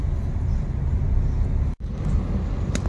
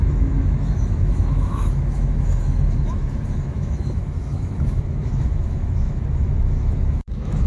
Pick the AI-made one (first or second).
second